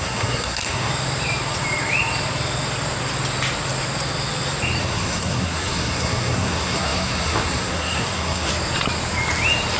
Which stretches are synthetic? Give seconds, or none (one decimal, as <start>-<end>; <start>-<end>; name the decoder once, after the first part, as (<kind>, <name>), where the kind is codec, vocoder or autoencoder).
0.0-0.9 (codec, SNAC); 4.8-8.5